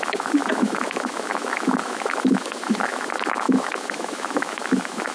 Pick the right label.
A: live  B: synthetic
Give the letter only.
B